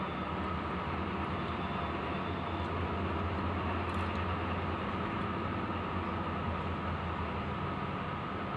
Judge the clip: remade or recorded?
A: recorded